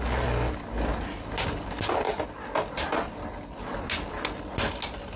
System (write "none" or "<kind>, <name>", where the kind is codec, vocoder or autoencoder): none